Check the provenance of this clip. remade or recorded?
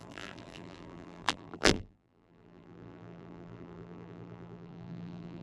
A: remade